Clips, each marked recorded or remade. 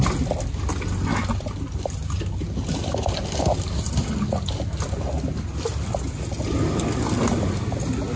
recorded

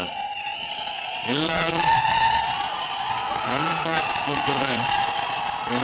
remade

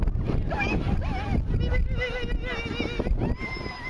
recorded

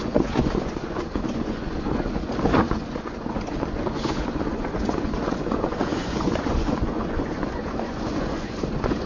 remade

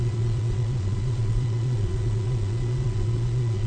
remade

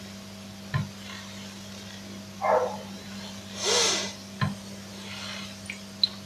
recorded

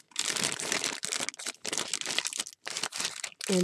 recorded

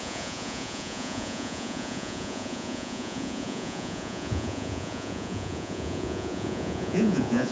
remade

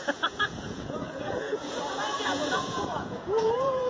remade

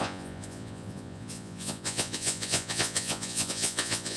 remade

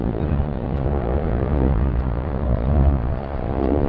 remade